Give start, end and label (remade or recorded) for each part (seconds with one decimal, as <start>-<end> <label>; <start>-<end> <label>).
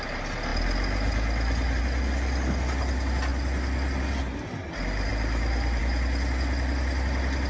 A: 0.0-7.5 recorded